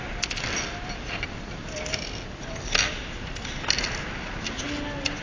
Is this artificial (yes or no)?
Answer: no